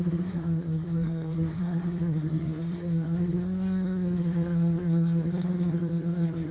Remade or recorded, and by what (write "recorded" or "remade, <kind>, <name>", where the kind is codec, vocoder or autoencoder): remade, codec, SNAC